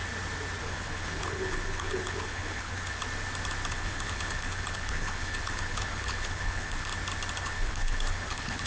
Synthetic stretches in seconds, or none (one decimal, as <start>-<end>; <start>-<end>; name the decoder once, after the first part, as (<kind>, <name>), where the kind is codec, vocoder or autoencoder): 0.6-3.0 (codec, HILCodec); 3.7-6.9; 7.4-8.7